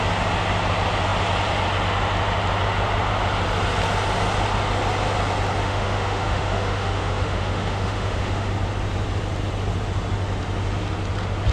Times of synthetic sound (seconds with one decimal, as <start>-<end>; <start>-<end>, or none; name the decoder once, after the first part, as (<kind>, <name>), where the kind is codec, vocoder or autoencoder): 5.6-8.5 (autoencoder, DAC-VAE)